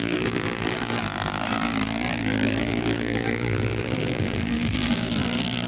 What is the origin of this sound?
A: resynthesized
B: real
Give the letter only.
A